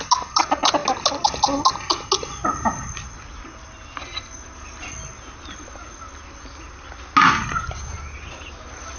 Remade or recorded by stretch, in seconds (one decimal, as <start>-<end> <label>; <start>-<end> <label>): 0.0-9.0 recorded